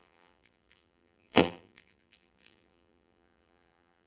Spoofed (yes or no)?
yes